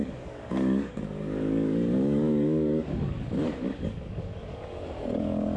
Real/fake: fake